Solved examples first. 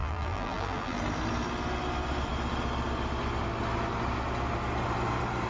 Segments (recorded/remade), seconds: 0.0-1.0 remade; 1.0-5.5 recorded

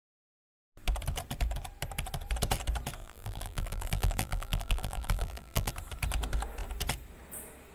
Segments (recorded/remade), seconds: 0.0-3.0 recorded; 3.0-5.7 remade; 5.7-7.7 recorded